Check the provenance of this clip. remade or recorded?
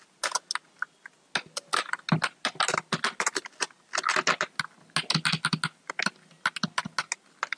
recorded